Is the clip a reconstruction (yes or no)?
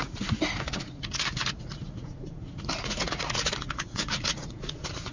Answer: yes